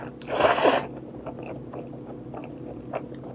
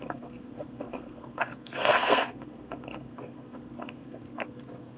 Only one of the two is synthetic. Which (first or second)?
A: second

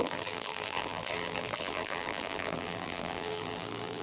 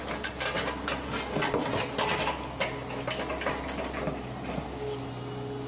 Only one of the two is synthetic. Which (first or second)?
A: first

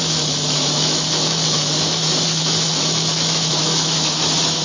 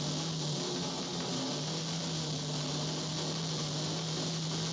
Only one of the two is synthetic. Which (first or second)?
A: first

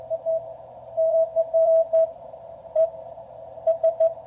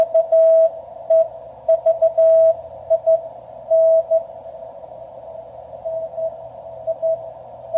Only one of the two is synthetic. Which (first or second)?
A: first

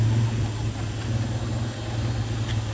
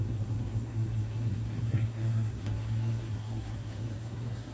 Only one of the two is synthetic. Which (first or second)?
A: second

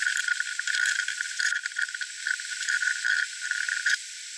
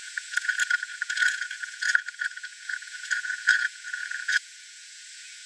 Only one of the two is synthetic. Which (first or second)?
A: second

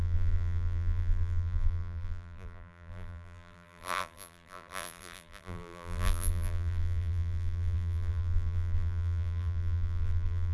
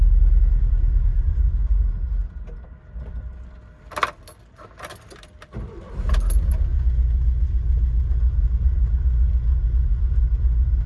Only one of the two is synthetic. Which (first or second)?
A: first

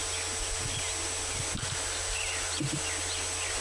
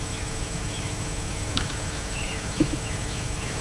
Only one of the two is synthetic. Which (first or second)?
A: second